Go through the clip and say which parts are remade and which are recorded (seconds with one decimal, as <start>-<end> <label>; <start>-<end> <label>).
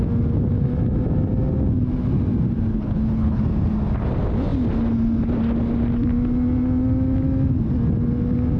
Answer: 0.0-2.7 recorded; 2.7-3.4 remade; 3.4-8.6 recorded